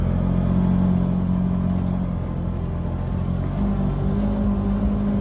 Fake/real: real